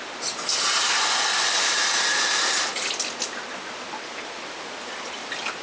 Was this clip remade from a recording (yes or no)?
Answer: no